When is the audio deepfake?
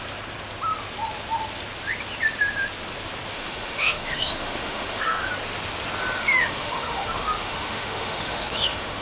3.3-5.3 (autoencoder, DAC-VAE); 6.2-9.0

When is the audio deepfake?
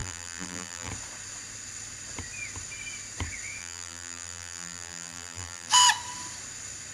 0.0-0.9 (vocoder, BigVGAN v2); 3.6-5.7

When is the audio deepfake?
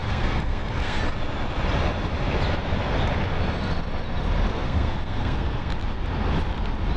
0.0-1.0 (codec, SNAC); 4.5-5.7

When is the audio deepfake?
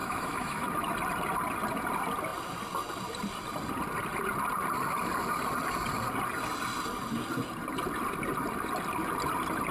0.0-0.7 (autoencoder, DAC-VAE)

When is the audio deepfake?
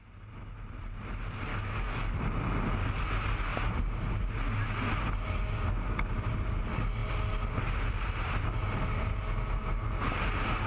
1.5-2.2 (codec, DAC)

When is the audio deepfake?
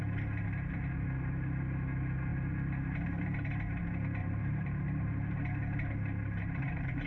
4.2-5.4 (vocoder, BigVGAN v2)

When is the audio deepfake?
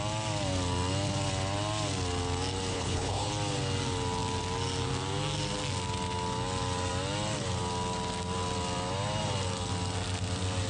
2.7-3.3 (codec, HILCodec)